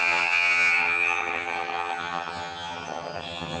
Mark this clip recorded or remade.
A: remade